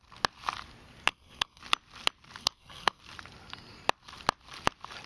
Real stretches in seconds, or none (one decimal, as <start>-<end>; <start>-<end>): 0.0-1.1; 1.6-2.4; 3.0-5.1